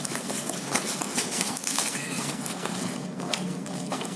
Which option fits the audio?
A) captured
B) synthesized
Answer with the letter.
B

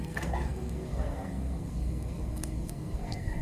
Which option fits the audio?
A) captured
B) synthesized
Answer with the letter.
B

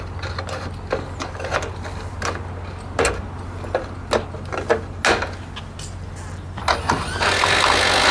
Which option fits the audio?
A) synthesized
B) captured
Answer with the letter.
B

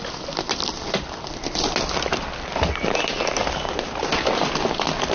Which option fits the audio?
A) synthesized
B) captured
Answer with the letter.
B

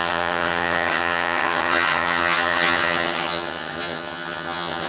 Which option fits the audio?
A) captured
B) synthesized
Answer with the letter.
B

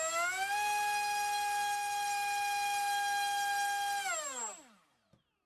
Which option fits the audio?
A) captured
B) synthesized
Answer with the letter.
A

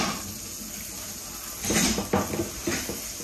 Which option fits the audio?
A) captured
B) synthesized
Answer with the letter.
A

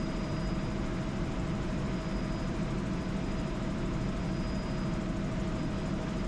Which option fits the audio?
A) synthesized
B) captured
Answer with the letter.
A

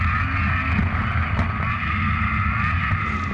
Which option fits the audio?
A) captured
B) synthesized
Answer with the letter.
A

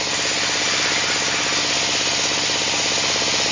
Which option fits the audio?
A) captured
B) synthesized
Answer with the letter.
A